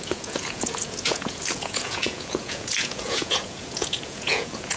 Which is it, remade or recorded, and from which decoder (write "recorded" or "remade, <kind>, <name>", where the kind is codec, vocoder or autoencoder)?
remade, vocoder, Vocos